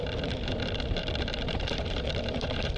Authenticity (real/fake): fake